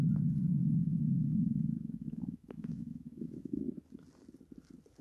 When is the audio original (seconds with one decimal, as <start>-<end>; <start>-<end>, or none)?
0.0-0.6; 3.6-5.0